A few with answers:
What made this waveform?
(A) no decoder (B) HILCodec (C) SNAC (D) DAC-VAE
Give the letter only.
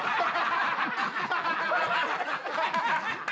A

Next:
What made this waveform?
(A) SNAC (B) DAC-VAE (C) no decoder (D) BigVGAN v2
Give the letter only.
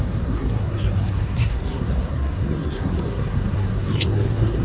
A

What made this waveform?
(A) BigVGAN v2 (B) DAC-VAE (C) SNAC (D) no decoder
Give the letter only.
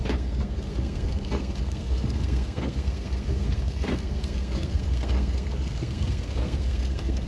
C